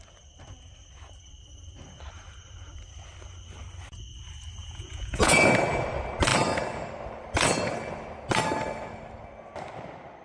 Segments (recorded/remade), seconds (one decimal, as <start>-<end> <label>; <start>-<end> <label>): 0.0-4.6 recorded; 4.6-5.5 remade; 5.5-10.2 recorded